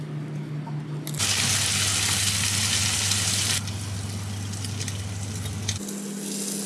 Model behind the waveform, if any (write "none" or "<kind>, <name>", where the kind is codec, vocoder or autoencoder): none